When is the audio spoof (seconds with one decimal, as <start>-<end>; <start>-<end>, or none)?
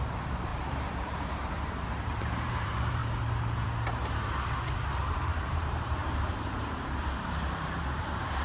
0.0-3.0; 5.1-8.4